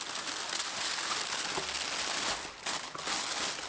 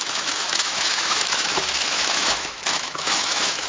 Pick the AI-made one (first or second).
second